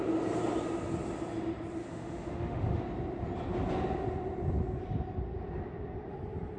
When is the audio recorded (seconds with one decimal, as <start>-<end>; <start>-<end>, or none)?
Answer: 0.0-1.9; 2.8-6.6